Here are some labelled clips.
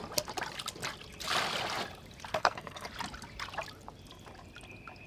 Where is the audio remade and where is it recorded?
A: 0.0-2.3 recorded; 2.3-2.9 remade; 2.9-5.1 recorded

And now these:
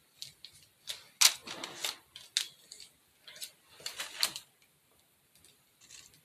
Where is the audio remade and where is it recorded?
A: 0.0-6.2 recorded

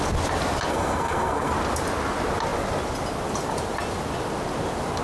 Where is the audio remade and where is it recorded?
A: 0.0-0.7 recorded; 0.7-1.5 remade; 1.5-5.0 recorded

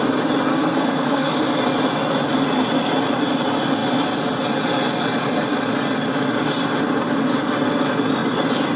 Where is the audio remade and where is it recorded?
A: 0.0-0.5 recorded; 0.5-1.3 remade; 1.3-8.8 recorded

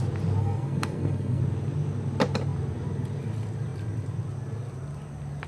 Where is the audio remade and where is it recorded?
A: 0.0-0.4 recorded; 0.4-1.4 remade; 1.4-5.5 recorded

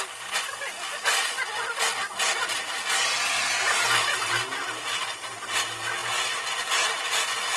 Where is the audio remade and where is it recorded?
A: 0.0-7.6 recorded

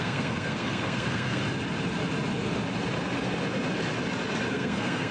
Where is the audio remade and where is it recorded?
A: 0.0-1.4 remade; 1.4-4.5 recorded; 4.5-5.1 remade